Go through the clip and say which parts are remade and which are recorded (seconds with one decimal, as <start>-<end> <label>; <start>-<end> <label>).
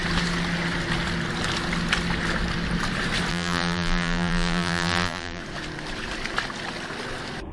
0.0-3.3 recorded; 3.3-5.4 remade; 5.4-7.5 recorded